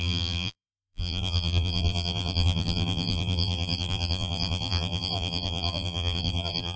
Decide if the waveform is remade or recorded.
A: remade